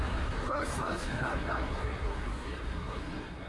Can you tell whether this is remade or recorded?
remade